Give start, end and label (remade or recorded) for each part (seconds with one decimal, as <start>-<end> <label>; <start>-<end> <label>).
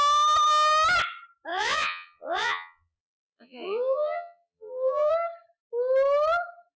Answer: 0.0-1.5 recorded; 1.5-5.1 remade; 5.1-6.8 recorded